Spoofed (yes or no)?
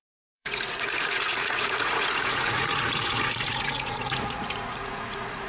yes